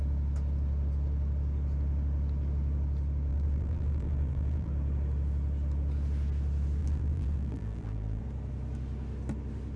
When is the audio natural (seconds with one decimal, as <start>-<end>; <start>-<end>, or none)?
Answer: 0.0-3.3; 4.7-6.8; 8.2-9.8